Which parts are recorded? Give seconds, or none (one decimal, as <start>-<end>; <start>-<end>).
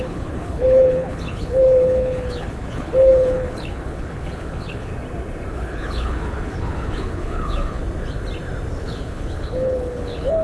4.9-5.5; 7.8-8.8